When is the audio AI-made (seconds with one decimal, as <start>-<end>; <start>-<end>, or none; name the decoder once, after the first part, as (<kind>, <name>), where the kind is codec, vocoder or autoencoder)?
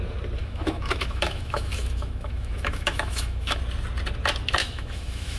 0.4-3.6 (autoencoder, DAC-VAE); 4.6-5.4